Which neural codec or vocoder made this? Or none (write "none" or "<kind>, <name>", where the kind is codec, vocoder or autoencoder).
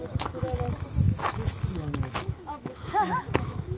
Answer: autoencoder, DAC-VAE